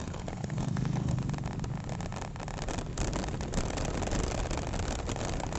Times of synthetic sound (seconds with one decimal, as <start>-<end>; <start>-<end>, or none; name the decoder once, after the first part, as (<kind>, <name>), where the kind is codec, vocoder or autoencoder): 0.0-1.2 (codec, SNAC)